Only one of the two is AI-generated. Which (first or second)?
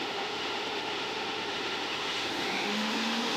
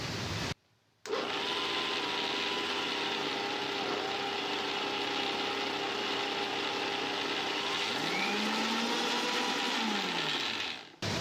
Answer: first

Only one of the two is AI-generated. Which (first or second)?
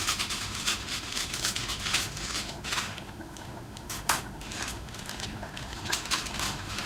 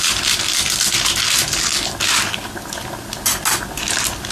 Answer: first